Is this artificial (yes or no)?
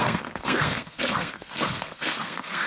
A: yes